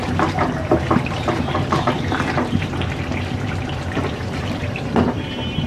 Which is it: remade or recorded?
remade